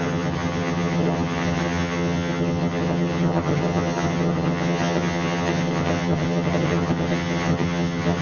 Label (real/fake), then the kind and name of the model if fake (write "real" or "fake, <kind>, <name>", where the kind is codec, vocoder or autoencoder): fake, vocoder, HiFi-GAN